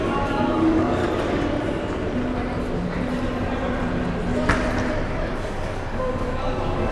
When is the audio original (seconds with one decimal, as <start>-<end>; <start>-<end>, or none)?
1.0-5.1